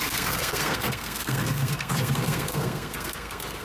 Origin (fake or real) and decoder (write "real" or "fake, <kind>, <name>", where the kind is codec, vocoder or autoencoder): fake, codec, SNAC